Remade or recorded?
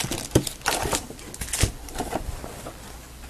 recorded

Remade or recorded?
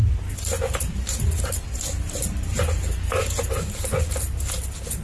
recorded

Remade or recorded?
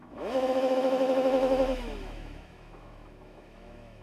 remade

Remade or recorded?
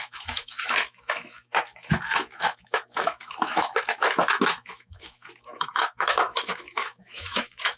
remade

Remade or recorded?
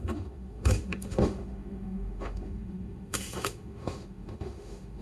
remade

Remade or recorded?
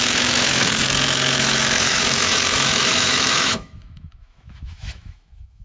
remade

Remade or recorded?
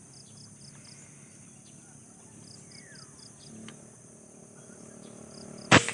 recorded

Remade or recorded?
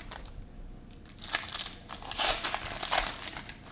recorded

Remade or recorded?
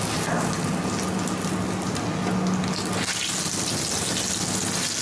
recorded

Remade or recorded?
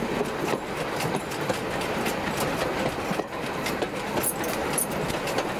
recorded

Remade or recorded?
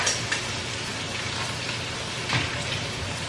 recorded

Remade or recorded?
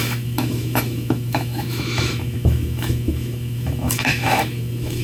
remade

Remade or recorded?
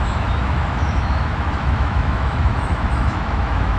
remade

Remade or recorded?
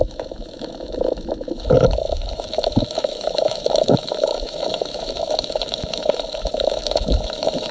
remade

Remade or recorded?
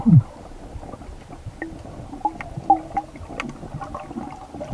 recorded